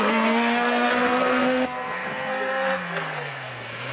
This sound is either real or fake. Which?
fake